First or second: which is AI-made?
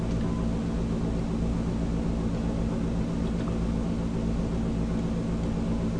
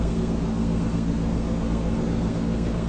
second